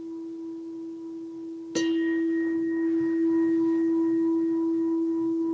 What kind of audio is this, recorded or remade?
recorded